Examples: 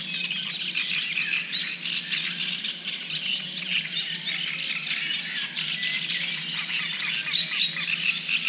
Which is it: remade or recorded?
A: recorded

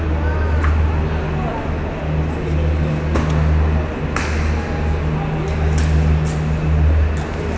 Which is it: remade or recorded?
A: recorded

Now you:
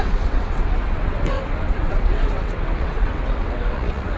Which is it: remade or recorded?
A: remade